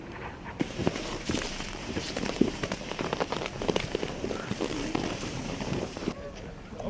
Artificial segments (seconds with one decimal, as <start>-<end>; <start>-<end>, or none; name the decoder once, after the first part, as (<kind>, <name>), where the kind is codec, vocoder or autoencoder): 0.0-3.1 (vocoder, BigVGAN v2); 5.0-6.0